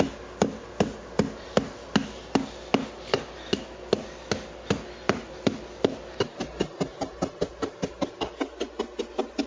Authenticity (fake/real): real